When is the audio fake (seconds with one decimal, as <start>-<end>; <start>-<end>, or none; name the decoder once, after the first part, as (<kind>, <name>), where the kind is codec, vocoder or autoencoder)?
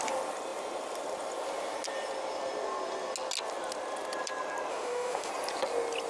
4.7-5.3 (autoencoder, DAC-VAE)